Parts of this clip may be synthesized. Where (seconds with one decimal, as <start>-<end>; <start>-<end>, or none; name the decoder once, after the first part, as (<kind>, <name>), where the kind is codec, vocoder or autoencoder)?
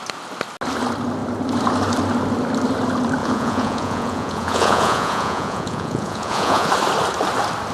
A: 3.2-6.7 (vocoder, Vocos)